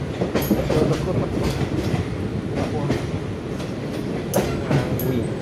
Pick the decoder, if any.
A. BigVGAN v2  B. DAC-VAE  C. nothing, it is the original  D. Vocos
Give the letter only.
C